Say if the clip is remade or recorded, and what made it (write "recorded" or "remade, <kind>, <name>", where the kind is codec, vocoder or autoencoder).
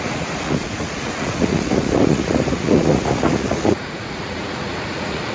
remade, vocoder, Vocos